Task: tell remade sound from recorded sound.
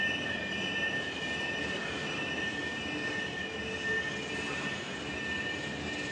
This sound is recorded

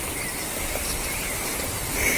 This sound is recorded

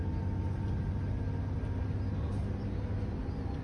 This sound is recorded